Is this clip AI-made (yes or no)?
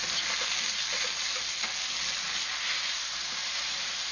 no